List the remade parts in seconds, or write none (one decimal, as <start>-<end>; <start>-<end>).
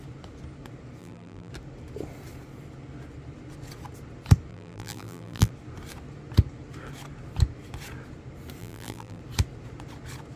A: 1.0-1.5; 4.5-5.5; 8.6-9.2